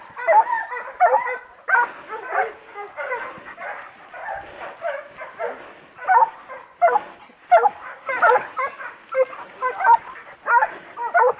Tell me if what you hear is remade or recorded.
recorded